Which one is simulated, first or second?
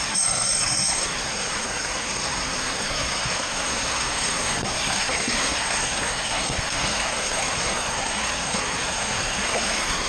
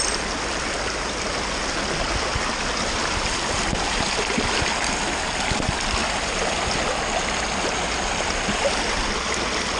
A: first